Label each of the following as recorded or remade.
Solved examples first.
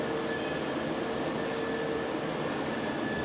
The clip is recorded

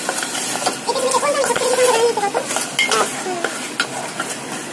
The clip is recorded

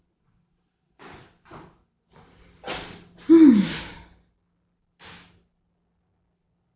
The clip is recorded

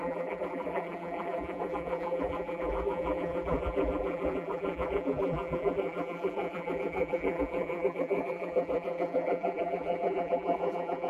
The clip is remade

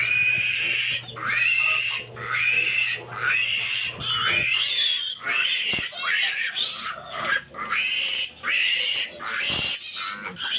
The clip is recorded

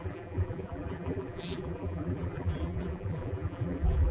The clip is remade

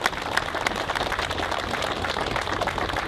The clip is recorded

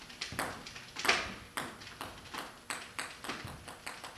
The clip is recorded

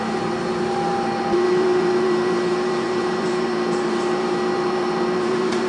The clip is remade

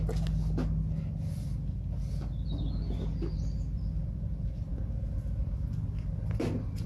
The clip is recorded